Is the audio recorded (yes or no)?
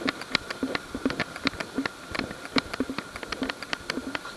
yes